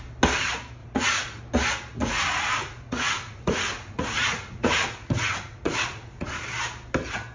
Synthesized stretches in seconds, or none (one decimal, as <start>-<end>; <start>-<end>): 0.8-1.4; 2.0-6.4